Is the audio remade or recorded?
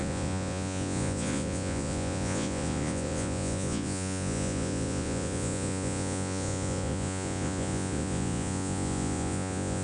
remade